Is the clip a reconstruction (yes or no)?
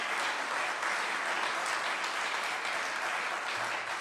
no